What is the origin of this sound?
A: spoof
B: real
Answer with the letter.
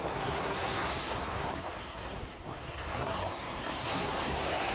A